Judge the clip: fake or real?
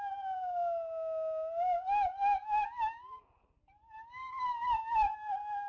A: real